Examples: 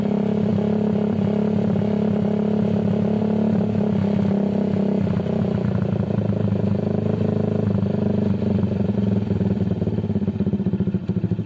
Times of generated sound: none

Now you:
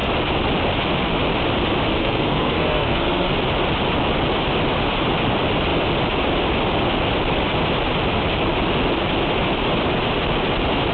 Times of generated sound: 2.0-3.3 (codec, SNAC)

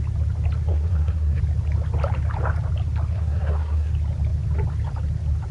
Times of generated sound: 0.7-1.4 (codec, SNAC); 3.1-3.9

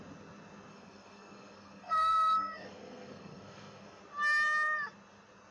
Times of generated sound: 0.7-4.0 (codec, SNAC)

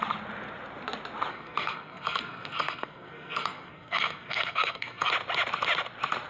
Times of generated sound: 1.3-5.1 (codec, SNAC)

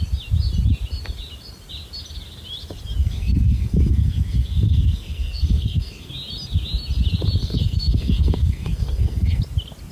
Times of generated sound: 3.0-6.1 (codec, SNAC); 7.4-9.4

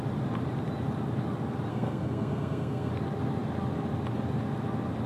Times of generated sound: 1.7-2.9 (codec, SNAC)

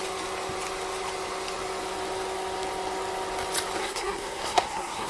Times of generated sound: 3.8-5.1 (codec, SNAC)